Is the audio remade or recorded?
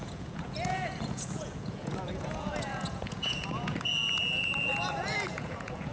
remade